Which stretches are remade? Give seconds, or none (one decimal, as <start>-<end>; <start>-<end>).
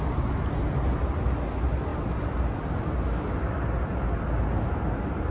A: none